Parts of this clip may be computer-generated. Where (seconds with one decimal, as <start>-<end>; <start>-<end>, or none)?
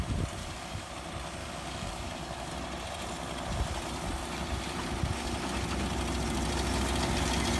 0.4-0.9; 1.4-2.5